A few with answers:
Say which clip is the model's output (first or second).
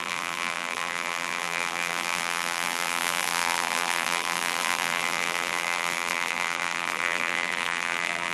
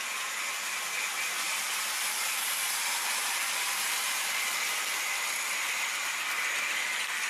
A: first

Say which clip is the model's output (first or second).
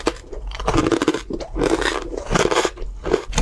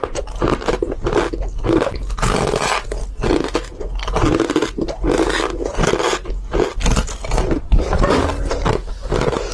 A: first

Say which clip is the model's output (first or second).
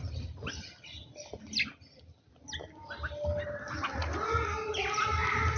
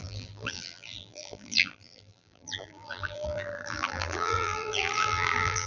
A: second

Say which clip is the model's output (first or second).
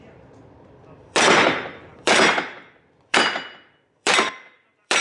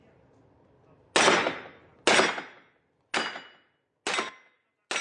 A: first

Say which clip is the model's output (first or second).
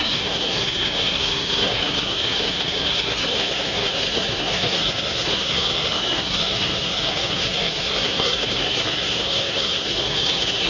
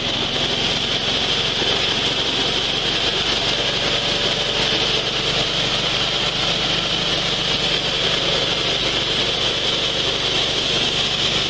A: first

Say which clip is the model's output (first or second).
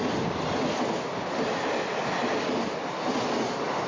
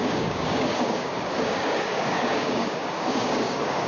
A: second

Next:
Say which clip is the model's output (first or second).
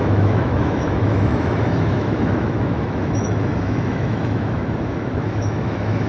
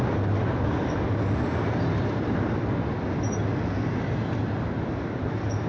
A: first